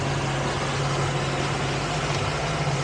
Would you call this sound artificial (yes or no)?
no